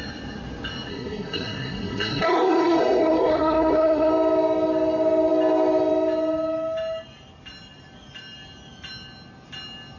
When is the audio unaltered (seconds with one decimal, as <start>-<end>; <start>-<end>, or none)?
0.0-0.9; 4.1-10.0